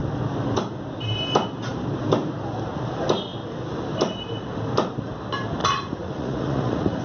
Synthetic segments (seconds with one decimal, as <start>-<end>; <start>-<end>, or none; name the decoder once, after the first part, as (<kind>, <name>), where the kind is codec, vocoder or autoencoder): 5.6-7.0 (vocoder, Vocos)